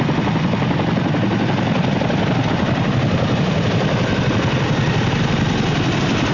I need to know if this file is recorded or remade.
recorded